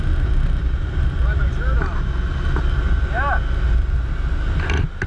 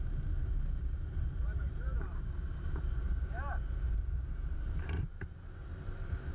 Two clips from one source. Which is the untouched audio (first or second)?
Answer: first